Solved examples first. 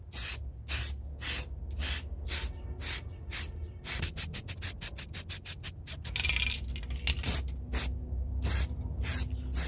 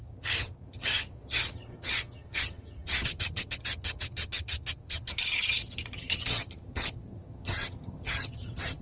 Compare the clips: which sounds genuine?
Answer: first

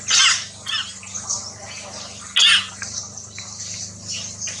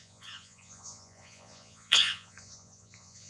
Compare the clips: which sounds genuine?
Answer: first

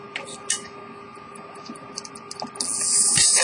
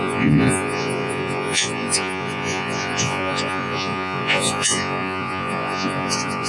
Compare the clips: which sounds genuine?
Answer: first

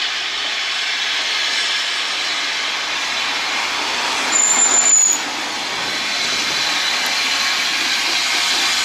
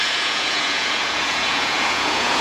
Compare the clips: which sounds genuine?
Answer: first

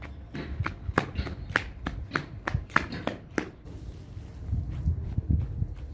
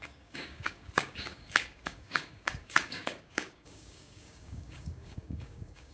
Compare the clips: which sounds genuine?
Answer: first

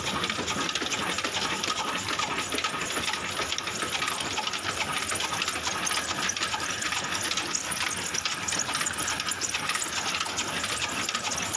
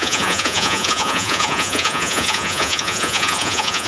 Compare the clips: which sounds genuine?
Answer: first